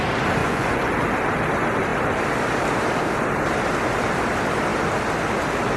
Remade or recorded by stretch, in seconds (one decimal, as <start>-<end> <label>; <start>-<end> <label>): 0.0-0.4 recorded; 0.4-0.9 remade; 0.9-5.8 recorded

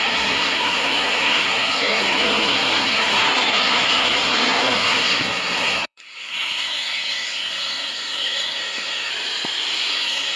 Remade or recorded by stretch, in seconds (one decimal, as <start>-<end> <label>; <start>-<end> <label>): 0.0-9.1 remade; 9.1-9.9 recorded; 9.9-10.4 remade

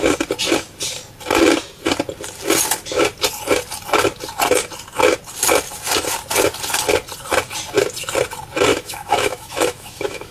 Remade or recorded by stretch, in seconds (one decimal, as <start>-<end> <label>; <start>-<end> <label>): 0.0-8.7 recorded; 8.7-10.3 remade